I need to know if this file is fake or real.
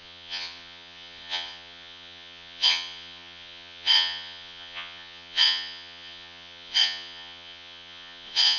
fake